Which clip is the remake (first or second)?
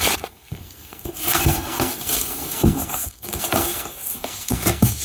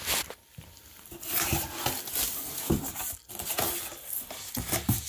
first